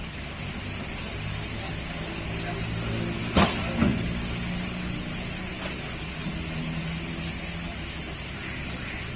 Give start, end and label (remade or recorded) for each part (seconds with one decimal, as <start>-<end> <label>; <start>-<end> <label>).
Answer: 0.0-9.2 recorded